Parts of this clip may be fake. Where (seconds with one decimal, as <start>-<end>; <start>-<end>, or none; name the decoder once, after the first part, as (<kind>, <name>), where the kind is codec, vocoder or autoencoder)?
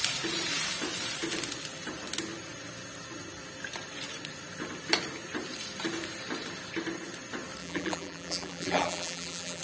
7.6-9.6 (vocoder, BigVGAN v2)